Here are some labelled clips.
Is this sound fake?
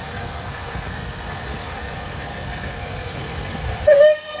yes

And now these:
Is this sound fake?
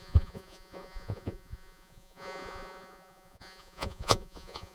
yes